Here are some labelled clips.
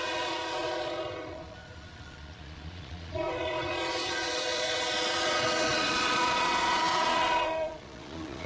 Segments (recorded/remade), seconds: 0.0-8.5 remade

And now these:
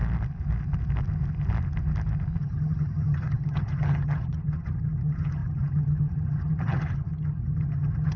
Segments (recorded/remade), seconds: 0.0-2.4 recorded; 2.4-8.2 remade

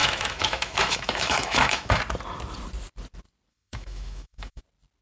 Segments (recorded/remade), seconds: 0.0-2.0 remade; 2.0-3.5 recorded; 3.5-4.6 remade; 4.6-5.0 recorded

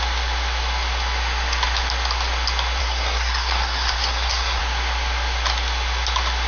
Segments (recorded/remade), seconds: 0.0-2.8 recorded; 2.8-4.6 remade; 4.6-6.5 recorded